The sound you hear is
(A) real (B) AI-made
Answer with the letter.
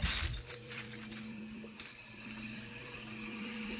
B